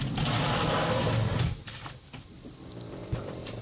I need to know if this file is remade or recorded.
recorded